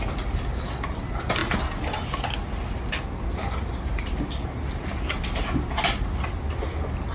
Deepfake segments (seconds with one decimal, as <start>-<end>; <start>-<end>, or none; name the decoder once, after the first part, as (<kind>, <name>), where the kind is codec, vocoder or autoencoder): none